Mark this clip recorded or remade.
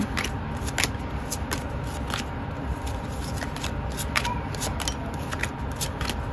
recorded